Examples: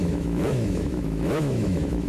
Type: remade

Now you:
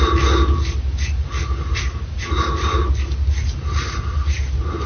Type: recorded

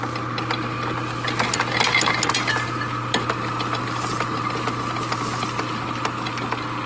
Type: recorded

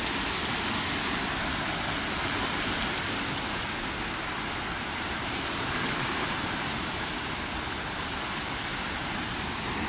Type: recorded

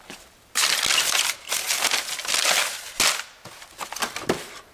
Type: recorded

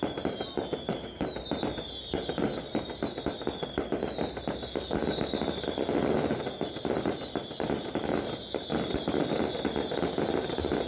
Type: recorded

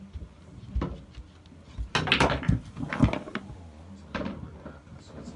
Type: recorded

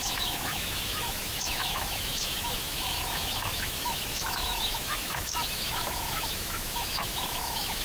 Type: remade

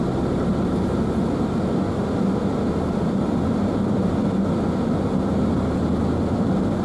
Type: recorded